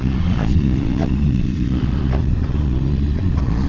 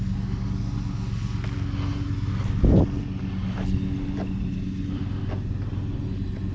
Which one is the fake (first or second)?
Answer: first